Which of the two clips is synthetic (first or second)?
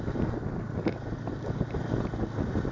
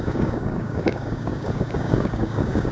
second